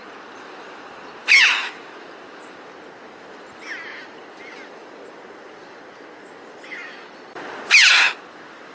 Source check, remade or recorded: recorded